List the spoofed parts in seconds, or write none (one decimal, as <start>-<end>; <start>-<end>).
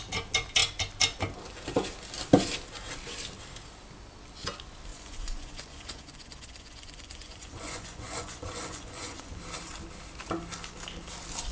4.9-9.4